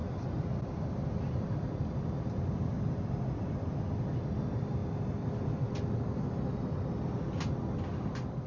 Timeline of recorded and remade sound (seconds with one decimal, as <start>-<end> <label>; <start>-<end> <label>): 0.0-8.5 recorded